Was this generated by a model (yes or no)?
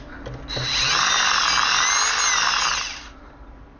no